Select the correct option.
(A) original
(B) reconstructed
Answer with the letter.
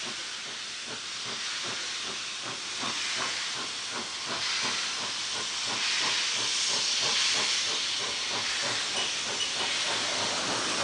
A